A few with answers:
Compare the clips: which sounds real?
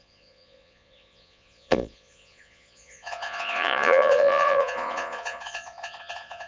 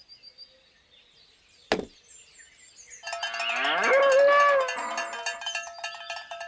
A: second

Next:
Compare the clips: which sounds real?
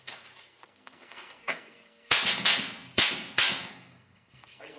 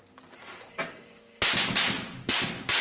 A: second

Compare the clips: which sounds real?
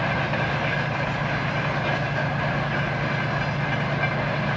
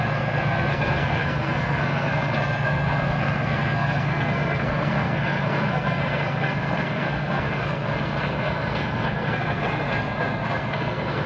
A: first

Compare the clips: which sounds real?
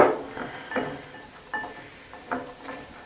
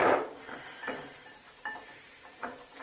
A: first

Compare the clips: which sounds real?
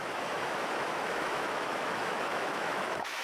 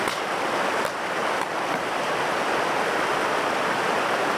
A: second